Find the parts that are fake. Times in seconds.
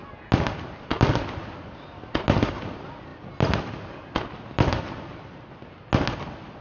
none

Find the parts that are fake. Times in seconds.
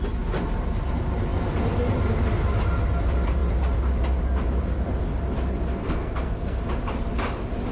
5.8-6.6